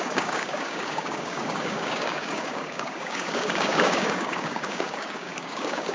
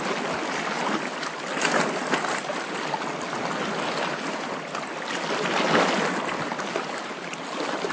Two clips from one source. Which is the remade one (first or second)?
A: first